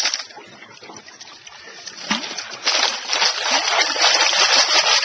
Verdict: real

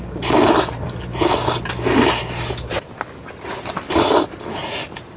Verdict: real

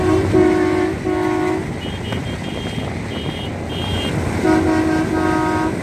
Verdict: real